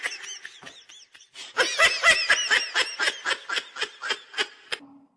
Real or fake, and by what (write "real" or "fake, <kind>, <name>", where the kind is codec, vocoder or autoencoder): real